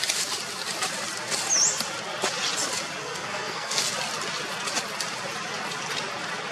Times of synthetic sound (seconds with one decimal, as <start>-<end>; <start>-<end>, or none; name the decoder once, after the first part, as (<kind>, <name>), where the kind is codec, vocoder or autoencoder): 3.0-3.8 (codec, SNAC)